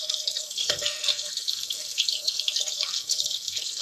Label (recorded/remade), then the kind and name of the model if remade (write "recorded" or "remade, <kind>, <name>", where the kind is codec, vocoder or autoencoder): remade, codec, SNAC